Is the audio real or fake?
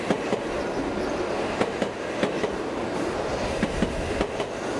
real